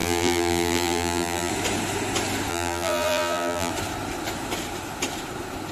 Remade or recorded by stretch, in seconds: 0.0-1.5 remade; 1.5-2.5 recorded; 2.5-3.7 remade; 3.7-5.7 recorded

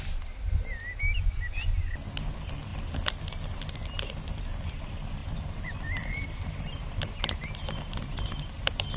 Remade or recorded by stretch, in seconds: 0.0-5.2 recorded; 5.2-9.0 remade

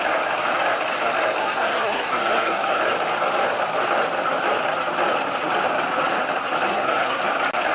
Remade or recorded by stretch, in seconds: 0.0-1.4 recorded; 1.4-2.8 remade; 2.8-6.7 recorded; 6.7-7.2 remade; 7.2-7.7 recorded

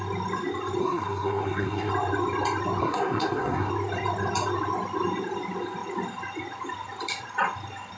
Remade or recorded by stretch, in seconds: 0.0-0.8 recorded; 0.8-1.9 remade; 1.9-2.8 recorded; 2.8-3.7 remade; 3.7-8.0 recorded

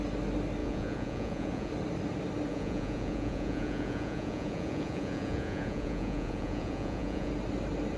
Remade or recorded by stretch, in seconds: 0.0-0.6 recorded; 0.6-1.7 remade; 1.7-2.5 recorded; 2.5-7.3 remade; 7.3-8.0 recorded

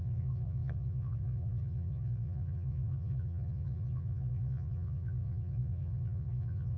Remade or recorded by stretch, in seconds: 0.0-6.8 remade

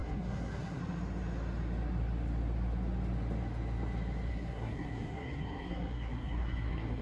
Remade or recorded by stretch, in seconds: 0.0-0.8 remade; 0.8-4.3 recorded; 4.3-7.0 remade

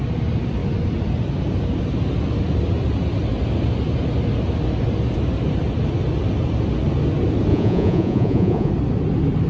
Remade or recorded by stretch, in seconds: 0.0-7.5 recorded; 7.5-8.7 remade; 8.7-9.5 recorded